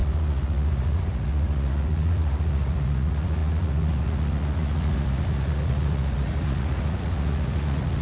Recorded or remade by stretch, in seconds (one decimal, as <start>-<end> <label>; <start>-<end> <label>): 0.0-8.0 remade